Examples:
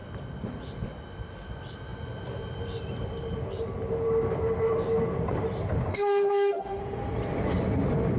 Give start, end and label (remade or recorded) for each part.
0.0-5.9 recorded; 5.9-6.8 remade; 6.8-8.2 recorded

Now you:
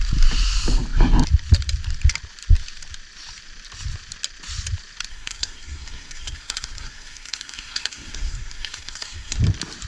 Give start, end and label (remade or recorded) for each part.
0.0-5.1 recorded; 5.1-9.4 remade; 9.4-9.9 recorded

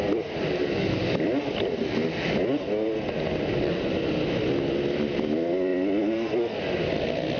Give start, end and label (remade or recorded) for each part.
0.0-7.4 recorded

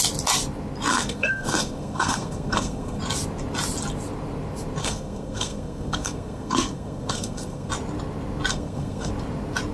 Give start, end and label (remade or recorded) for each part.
0.0-0.9 recorded; 0.9-3.0 remade; 3.0-4.8 recorded; 4.8-7.7 remade; 7.7-8.5 recorded; 8.5-9.1 remade; 9.1-9.7 recorded

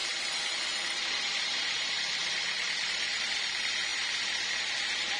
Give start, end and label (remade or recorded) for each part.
0.0-0.6 remade; 0.6-2.2 recorded; 2.2-3.4 remade; 3.4-5.2 recorded